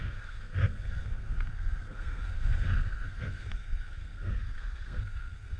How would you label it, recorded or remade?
remade